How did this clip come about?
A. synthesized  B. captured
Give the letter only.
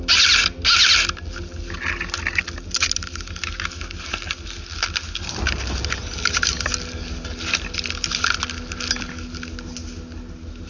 B